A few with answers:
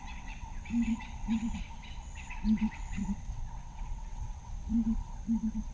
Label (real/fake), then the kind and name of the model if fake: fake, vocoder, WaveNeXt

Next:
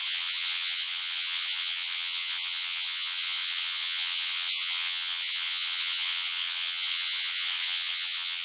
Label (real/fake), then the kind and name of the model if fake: fake, vocoder, WaveNeXt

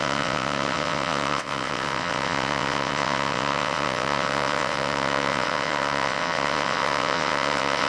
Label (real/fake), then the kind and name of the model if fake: fake, vocoder, WaveNeXt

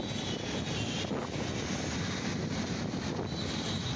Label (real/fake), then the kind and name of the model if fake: real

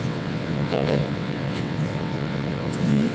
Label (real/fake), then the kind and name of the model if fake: fake, vocoder, WaveNeXt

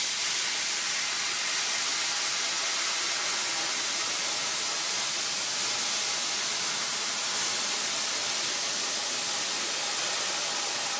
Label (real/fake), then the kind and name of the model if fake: real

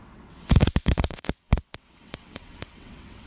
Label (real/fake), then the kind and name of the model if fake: fake, vocoder, WaveNeXt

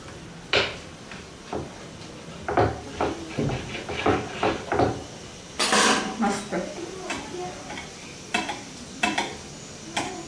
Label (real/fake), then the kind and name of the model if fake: real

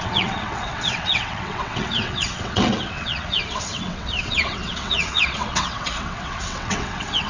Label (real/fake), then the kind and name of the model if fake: fake, vocoder, WaveNeXt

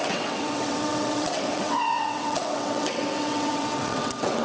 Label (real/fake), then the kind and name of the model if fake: fake, vocoder, WaveNeXt